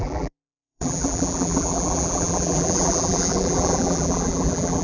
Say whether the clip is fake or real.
fake